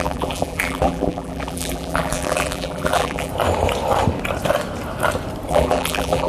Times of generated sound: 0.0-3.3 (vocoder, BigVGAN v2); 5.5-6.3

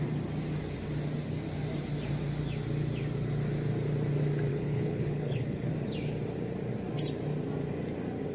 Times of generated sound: 4.5-5.7 (codec, HILCodec)

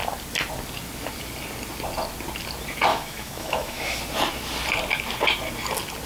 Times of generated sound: 2.9-4.0 (autoencoder, DAC-VAE)

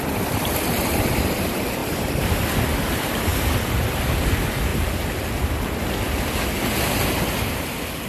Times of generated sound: none

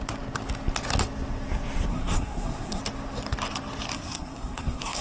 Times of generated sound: 1.9-2.8 (codec, SNAC); 3.9-5.0

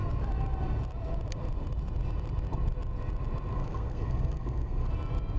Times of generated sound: 3.5-4.9 (codec, SNAC)

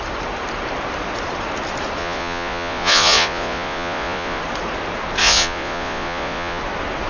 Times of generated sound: 2.0-4.4 (vocoder, Vocos); 5.2-6.6

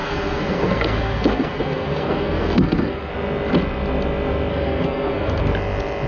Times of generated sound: 0.0-3.1 (codec, SNAC); 4.5-5.4